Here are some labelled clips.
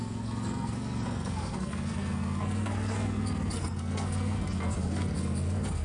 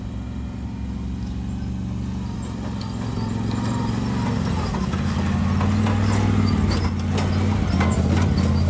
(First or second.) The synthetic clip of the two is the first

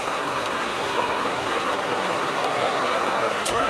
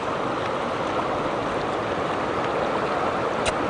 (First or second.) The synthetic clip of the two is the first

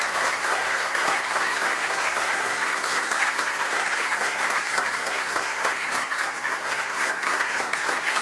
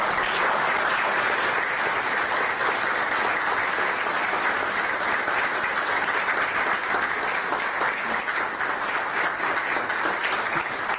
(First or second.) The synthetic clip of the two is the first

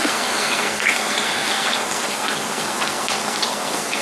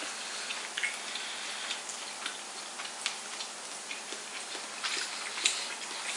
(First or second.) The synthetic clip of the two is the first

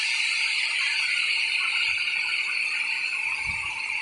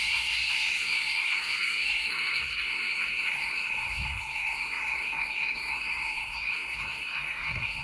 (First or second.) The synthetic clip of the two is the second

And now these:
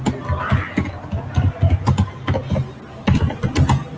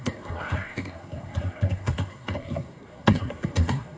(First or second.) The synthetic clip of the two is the second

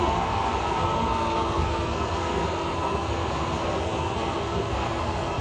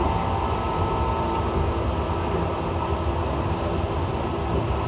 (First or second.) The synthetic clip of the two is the first